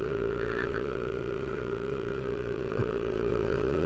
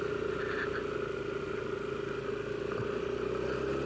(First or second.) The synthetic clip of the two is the first